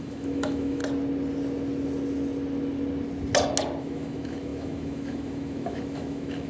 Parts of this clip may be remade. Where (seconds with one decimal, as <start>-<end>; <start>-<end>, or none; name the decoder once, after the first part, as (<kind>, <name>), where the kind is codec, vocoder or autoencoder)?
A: 0.0-0.8 (autoencoder, DAC-VAE); 3.8-6.5